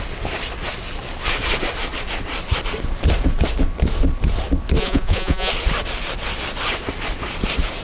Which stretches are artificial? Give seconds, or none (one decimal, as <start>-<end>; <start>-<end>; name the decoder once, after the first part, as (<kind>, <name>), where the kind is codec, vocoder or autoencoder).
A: 4.8-5.5 (vocoder, Vocos)